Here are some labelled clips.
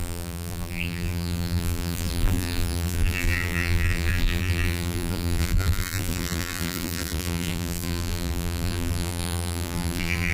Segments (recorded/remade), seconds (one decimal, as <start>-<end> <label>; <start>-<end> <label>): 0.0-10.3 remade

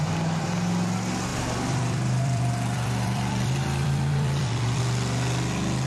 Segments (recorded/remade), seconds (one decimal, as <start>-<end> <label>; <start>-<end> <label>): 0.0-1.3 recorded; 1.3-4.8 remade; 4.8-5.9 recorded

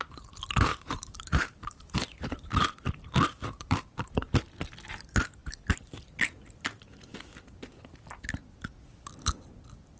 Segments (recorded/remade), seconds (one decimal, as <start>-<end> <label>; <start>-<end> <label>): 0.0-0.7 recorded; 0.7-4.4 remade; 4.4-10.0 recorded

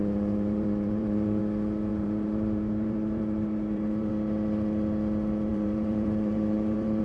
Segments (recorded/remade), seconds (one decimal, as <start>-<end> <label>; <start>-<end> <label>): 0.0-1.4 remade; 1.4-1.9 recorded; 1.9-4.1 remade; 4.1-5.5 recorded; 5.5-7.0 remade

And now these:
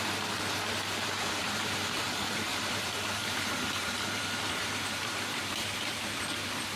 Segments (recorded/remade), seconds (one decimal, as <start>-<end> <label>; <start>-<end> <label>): 0.0-1.4 recorded; 1.4-2.0 remade; 2.0-2.5 recorded; 2.5-6.8 remade

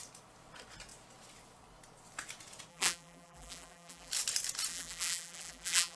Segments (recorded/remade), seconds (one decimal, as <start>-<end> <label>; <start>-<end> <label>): 0.0-2.7 recorded; 2.7-4.1 remade; 4.1-4.7 recorded; 4.7-6.0 remade